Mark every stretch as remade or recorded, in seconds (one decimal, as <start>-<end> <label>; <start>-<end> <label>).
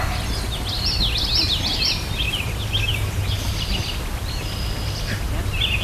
0.0-5.8 recorded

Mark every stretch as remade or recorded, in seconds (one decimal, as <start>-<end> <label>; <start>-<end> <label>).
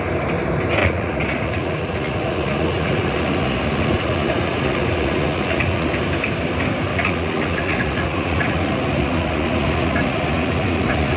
0.0-0.8 recorded; 0.8-5.9 remade; 5.9-6.9 recorded; 6.9-11.2 remade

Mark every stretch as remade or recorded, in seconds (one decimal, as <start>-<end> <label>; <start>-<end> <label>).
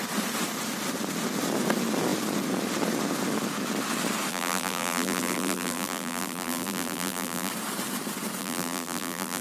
0.0-4.3 recorded; 4.3-7.5 remade; 7.5-8.4 recorded; 8.4-9.4 remade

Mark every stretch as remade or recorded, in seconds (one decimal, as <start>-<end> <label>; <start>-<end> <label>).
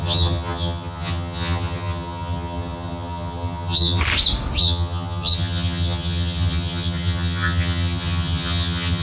0.0-4.0 remade; 4.0-4.6 recorded; 4.6-9.0 remade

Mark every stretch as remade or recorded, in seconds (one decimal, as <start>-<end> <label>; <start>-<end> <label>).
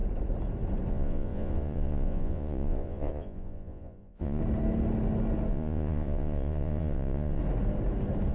0.0-0.9 recorded; 0.9-4.4 remade; 4.4-5.5 recorded; 5.5-7.4 remade; 7.4-8.3 recorded